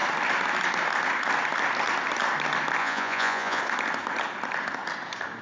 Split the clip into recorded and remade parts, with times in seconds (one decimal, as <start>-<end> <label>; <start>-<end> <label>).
0.0-2.8 recorded; 2.8-3.6 remade; 3.6-5.4 recorded